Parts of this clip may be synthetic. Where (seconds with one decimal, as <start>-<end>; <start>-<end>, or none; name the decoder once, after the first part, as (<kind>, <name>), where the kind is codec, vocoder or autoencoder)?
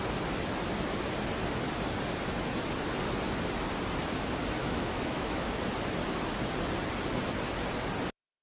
4.6-5.6 (autoencoder, DAC-VAE)